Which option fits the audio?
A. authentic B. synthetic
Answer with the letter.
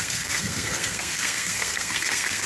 B